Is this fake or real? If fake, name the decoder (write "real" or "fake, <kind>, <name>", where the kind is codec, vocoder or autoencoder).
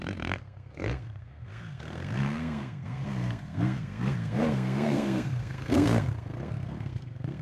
fake, codec, SNAC